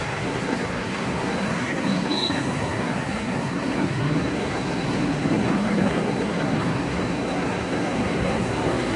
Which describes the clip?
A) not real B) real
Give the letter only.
A